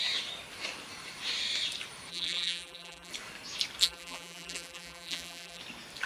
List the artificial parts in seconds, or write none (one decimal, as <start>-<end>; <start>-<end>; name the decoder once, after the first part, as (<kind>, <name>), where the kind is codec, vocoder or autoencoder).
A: 2.1-3.1 (vocoder, BigVGAN v2); 3.8-5.6

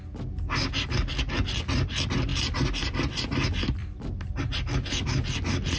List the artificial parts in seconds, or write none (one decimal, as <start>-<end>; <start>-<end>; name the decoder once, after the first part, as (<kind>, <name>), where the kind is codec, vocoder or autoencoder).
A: 3.8-4.4 (vocoder, BigVGAN v2)

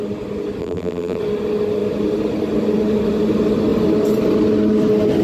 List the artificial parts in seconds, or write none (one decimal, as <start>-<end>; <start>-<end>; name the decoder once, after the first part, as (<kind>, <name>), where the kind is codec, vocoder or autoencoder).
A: 0.6-1.2 (vocoder, BigVGAN v2)

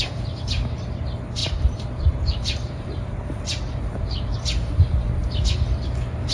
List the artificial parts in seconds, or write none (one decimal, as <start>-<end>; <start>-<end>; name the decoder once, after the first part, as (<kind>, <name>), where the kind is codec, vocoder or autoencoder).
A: 1.4-5.1 (vocoder, BigVGAN v2)